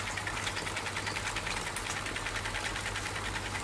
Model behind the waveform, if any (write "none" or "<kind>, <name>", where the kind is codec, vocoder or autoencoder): none